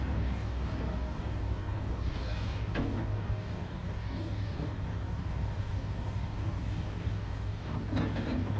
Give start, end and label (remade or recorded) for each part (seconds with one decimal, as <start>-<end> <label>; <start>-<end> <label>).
0.0-8.6 remade